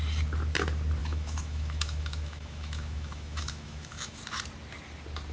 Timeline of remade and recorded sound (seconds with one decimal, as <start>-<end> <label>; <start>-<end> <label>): 0.0-1.0 recorded; 1.0-4.2 remade; 4.2-5.3 recorded